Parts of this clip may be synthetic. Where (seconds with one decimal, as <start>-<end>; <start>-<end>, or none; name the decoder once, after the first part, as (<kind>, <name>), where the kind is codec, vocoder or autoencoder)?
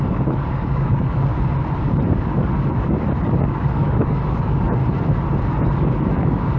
0.0-1.3 (codec, DAC); 1.8-4.8; 5.5-6.6